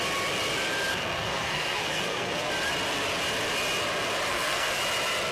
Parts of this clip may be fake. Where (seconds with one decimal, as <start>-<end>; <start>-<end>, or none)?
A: 0.9-2.5; 4.3-4.8